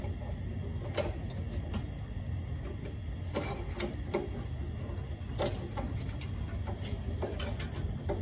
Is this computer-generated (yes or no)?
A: no